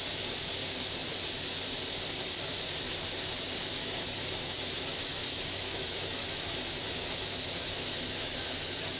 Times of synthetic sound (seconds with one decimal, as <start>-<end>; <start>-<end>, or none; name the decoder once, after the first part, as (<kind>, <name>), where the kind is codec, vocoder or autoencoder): 3.7-9.0 (autoencoder, DAC-VAE)